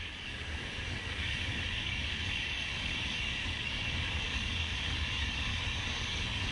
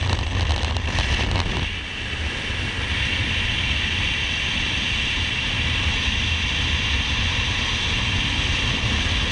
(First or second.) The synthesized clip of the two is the first